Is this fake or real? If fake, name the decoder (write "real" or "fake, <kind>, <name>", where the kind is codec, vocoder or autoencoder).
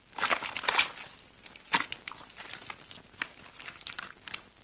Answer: real